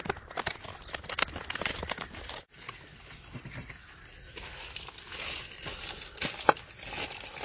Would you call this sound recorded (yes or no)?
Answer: yes